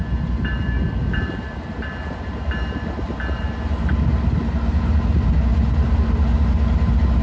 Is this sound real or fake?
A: real